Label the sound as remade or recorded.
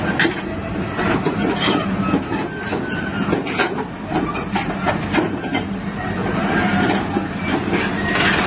remade